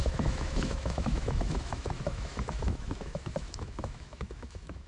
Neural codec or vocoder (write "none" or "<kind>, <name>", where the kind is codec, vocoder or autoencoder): autoencoder, DAC-VAE